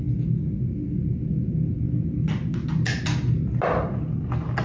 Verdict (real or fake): real